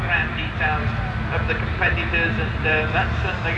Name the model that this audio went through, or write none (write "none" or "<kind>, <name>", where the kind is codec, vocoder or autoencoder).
none